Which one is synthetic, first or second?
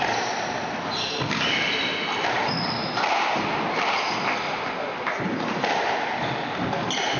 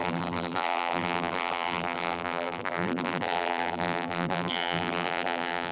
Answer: second